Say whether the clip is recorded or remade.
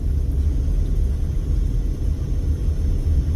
recorded